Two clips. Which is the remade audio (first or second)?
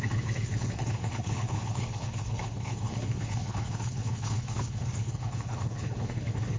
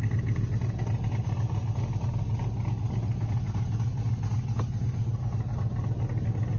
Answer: first